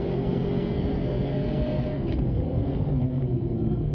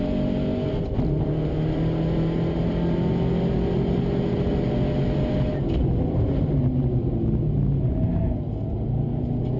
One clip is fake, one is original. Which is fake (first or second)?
first